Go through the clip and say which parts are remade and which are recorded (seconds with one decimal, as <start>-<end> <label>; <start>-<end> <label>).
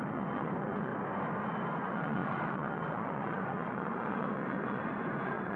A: 0.0-0.9 remade; 0.9-1.7 recorded; 1.7-5.6 remade